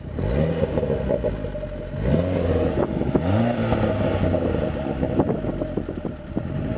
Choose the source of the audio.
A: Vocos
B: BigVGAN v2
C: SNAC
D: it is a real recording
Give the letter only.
D